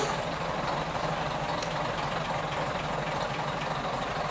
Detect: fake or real real